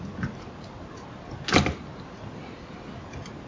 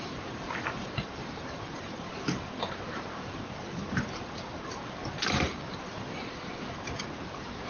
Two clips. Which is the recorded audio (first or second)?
first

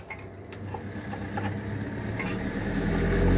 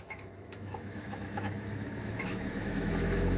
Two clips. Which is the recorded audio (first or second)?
first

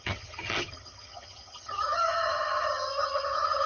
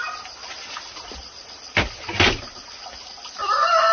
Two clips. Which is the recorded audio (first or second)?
second